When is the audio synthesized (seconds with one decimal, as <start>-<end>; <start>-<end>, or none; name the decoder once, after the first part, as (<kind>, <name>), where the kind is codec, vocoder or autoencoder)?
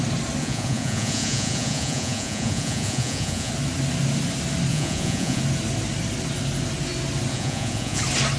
0.4-3.5 (vocoder, Vocos); 4.7-5.4; 7.3-8.0